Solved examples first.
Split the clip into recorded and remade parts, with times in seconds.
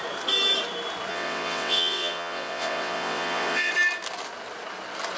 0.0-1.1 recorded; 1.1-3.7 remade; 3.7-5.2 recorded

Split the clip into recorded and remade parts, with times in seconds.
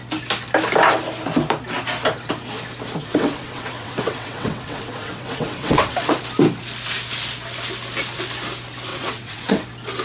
0.0-3.0 recorded; 3.0-6.2 remade; 6.2-8.9 recorded; 8.9-9.6 remade; 9.6-10.0 recorded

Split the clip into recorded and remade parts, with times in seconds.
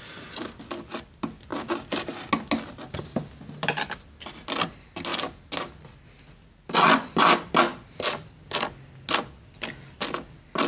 0.0-10.7 recorded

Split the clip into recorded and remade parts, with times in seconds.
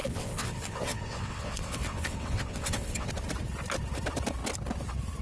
0.0-3.1 remade; 3.1-5.2 recorded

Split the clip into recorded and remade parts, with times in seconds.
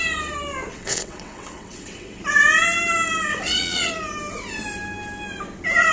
0.0-0.7 recorded; 0.7-2.2 remade; 2.2-3.3 recorded; 3.3-3.9 remade; 3.9-5.9 recorded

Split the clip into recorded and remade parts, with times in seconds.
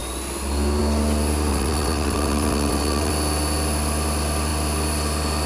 0.0-1.5 recorded; 1.5-3.1 remade; 3.1-5.5 recorded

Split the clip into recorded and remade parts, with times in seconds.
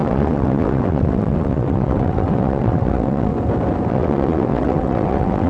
0.0-3.3 remade; 3.3-3.9 recorded; 3.9-5.5 remade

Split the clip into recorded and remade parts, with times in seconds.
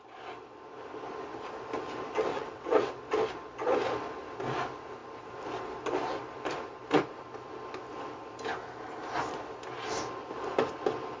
0.0-2.3 recorded; 2.3-3.0 remade; 3.0-11.2 recorded